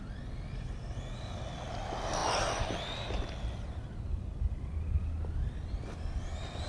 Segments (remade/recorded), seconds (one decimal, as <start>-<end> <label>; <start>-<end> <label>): 0.0-6.7 recorded